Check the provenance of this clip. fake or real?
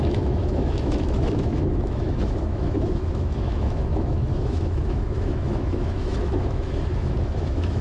fake